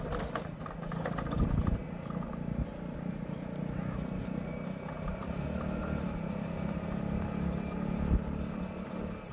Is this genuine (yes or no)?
yes